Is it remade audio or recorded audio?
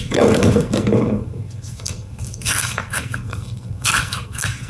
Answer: remade